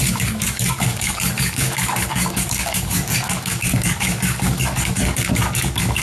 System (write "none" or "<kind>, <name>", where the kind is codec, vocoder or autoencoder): codec, DAC